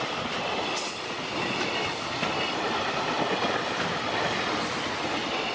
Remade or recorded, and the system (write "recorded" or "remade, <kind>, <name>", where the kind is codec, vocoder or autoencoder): remade, vocoder, BigVGAN v2